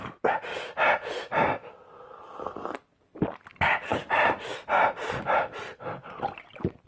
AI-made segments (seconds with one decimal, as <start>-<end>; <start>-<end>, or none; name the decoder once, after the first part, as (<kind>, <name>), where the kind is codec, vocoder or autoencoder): none